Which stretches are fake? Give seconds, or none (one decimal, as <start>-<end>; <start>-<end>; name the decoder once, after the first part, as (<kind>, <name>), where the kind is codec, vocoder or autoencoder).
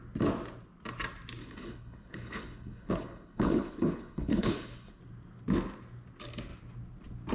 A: 1.4-5.0 (codec, HILCodec)